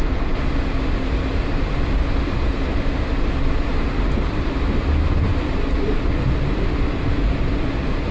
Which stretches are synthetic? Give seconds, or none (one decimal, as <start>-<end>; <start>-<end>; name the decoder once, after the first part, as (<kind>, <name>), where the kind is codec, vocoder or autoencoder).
none